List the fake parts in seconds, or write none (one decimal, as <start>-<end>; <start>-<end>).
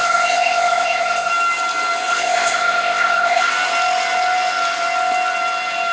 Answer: 0.0-1.3; 2.1-3.5